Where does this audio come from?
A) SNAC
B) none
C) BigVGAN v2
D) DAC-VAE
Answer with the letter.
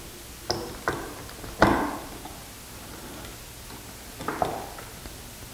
B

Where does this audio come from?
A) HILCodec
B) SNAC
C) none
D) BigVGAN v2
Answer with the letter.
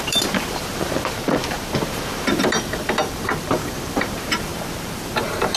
D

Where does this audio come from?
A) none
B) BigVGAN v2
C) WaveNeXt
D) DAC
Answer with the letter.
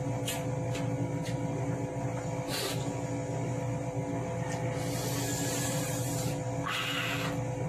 A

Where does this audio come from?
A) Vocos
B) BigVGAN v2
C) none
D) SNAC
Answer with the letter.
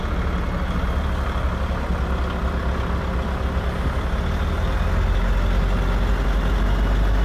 C